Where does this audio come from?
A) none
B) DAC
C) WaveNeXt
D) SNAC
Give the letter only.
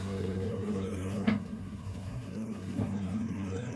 D